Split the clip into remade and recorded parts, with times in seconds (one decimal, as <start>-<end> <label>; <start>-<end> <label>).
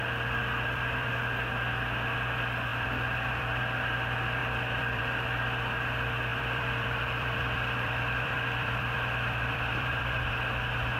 0.0-0.4 recorded; 0.4-1.1 remade; 1.1-2.7 recorded; 2.7-3.6 remade; 3.6-4.4 recorded; 4.4-5.0 remade; 5.0-6.3 recorded; 6.3-10.3 remade; 10.3-11.0 recorded